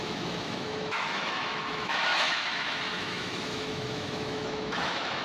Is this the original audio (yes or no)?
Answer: no